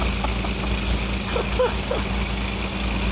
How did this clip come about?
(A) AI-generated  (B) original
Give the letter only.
B